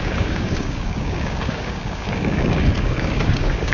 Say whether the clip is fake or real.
fake